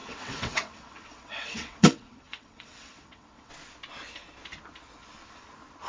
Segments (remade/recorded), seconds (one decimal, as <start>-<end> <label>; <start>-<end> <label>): 0.0-3.5 remade; 3.5-5.9 recorded